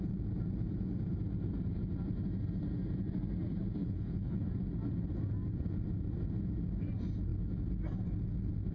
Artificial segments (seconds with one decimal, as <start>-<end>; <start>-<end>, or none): 3.8-4.5